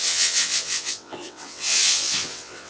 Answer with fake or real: fake